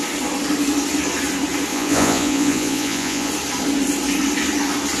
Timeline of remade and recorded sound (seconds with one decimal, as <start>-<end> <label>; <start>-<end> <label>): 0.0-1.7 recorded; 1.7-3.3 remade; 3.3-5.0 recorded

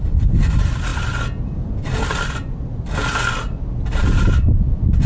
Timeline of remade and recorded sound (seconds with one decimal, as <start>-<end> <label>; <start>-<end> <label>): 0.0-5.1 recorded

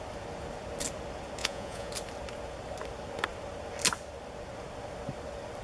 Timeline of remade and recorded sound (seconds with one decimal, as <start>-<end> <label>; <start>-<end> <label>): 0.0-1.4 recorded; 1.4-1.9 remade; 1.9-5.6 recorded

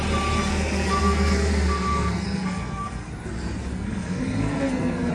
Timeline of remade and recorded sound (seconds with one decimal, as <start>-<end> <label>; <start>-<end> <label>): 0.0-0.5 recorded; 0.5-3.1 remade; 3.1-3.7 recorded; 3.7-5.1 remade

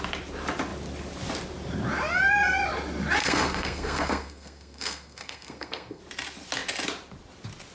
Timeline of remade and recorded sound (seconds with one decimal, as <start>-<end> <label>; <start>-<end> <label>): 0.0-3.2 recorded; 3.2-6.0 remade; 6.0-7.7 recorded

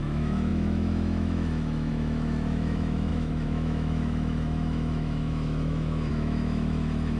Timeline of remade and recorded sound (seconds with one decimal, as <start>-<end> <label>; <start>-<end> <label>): 0.0-7.2 remade

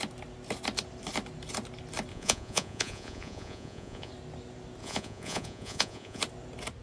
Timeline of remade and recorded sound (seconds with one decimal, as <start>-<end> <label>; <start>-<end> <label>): 0.0-2.1 recorded; 2.1-4.1 remade; 4.1-4.8 recorded; 4.8-6.2 remade; 6.2-6.8 recorded